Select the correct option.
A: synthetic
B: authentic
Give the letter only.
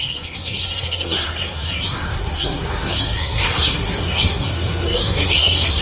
A